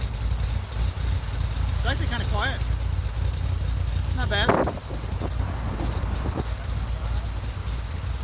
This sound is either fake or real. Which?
real